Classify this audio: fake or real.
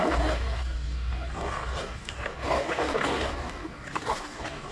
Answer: fake